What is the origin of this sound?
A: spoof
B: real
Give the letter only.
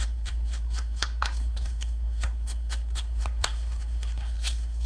A